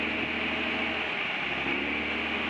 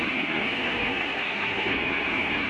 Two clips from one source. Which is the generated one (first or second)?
second